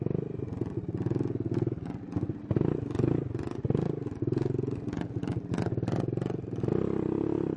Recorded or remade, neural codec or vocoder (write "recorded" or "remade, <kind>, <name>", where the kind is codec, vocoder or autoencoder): recorded